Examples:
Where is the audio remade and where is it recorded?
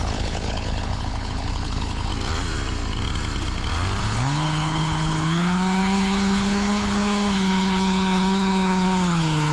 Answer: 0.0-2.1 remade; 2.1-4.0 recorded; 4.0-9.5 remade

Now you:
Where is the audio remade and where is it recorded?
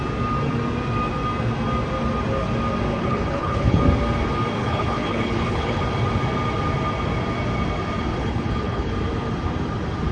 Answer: 0.0-2.9 recorded; 2.9-3.8 remade; 3.8-4.6 recorded; 4.6-5.8 remade; 5.8-8.1 recorded; 8.1-8.9 remade; 8.9-10.1 recorded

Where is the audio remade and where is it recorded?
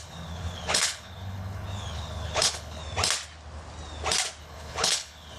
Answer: 0.0-2.8 remade; 2.8-4.4 recorded; 4.4-5.4 remade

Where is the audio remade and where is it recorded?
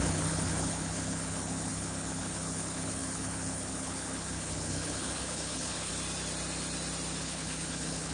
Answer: 0.0-5.9 remade; 5.9-7.2 recorded; 7.2-8.1 remade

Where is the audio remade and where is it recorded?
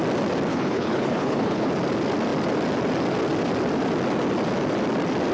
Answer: 0.0-0.5 recorded; 0.5-1.7 remade; 1.7-5.3 recorded